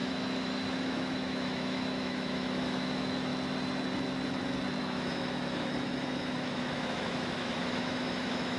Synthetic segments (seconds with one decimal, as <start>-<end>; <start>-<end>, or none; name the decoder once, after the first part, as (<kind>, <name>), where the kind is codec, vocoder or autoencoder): 0.0-3.3 (autoencoder, DAC-VAE); 4.8-8.6